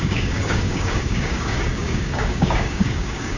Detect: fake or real fake